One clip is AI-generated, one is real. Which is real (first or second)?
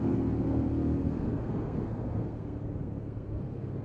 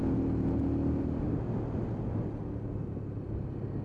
second